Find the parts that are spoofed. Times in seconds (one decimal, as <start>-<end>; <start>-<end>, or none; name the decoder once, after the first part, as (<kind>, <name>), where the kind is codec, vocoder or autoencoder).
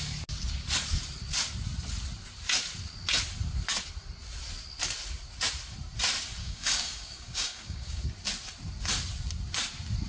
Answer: 6.4-8.0 (codec, DAC)